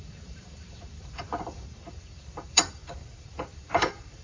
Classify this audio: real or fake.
fake